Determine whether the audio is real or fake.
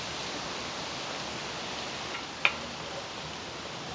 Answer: real